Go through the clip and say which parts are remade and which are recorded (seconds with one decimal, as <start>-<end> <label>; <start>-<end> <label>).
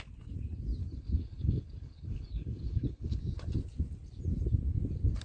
0.0-0.8 recorded; 0.8-3.2 remade; 3.2-5.2 recorded